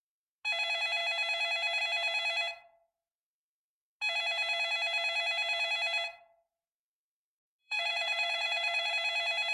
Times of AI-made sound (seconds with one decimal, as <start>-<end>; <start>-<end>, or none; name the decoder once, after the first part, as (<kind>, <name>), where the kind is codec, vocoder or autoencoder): 7.6-8.9 (vocoder, Vocos)